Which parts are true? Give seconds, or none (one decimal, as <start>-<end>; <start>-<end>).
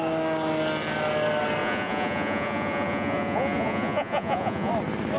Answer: 0.0-1.6; 4.7-5.2